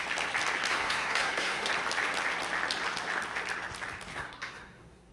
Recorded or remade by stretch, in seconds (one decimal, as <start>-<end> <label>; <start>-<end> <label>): 0.0-0.7 recorded; 0.7-1.7 remade; 1.7-4.1 recorded; 4.1-5.1 remade